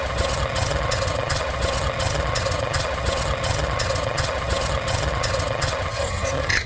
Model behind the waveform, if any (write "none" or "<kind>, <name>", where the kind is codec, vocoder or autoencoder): vocoder, HiFi-GAN